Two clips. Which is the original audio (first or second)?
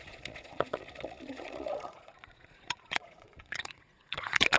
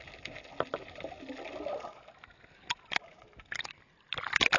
second